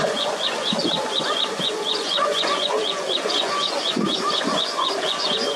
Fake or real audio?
fake